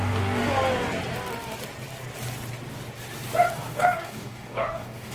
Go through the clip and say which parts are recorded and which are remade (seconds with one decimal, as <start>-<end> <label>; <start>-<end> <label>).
0.0-0.4 remade; 0.4-3.5 recorded; 3.5-5.1 remade